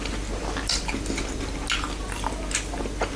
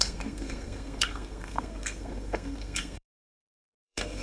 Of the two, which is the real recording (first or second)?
first